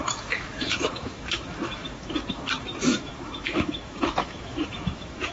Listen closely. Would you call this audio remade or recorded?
remade